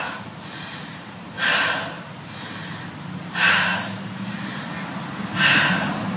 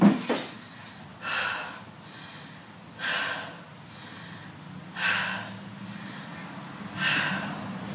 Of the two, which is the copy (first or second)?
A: first